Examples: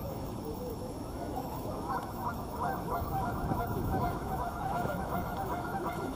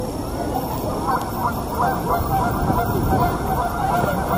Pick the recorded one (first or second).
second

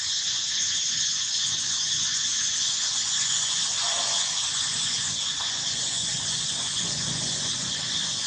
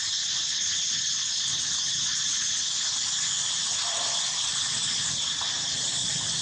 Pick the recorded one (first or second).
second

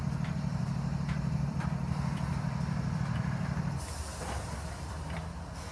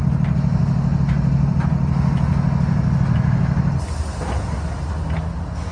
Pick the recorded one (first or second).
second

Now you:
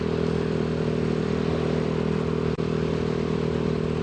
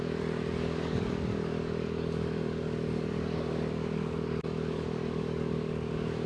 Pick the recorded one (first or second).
first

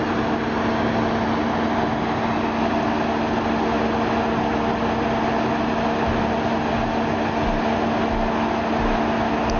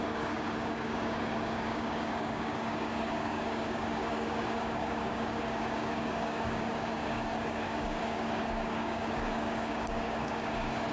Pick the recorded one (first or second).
first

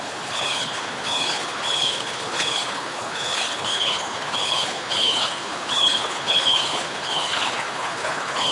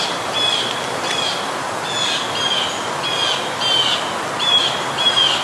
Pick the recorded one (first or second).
second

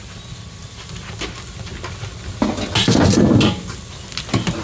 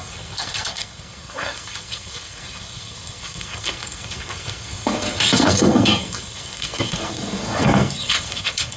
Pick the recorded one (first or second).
first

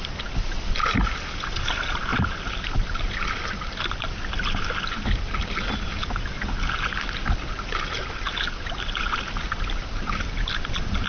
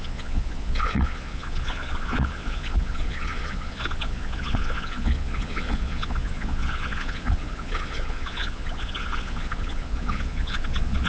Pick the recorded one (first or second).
first